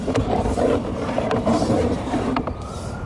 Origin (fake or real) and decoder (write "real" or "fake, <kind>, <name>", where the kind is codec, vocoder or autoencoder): fake, vocoder, BigVGAN v2